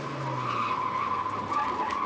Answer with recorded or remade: recorded